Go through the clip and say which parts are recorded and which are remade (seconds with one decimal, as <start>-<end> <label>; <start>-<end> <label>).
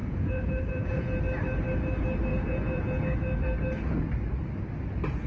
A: 0.0-1.2 remade; 1.2-2.3 recorded; 2.3-3.0 remade; 3.0-5.3 recorded